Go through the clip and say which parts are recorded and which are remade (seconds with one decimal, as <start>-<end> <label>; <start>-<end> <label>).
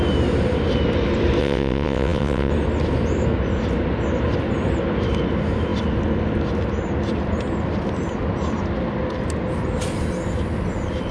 0.0-1.4 recorded; 1.4-2.5 remade; 2.5-11.1 recorded